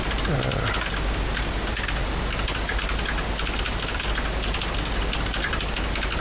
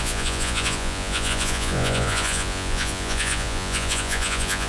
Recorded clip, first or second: first